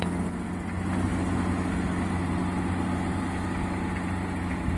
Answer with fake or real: real